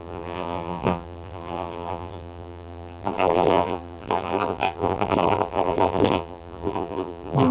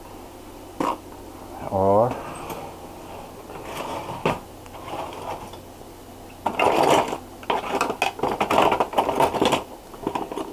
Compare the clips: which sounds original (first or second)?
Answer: second